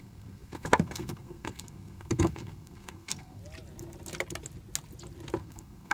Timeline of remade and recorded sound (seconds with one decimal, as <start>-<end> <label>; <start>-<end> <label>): 0.0-3.4 remade; 3.4-5.4 recorded; 5.4-5.9 remade